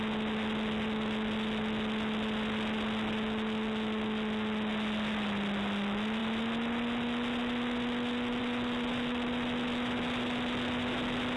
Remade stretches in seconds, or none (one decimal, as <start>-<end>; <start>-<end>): none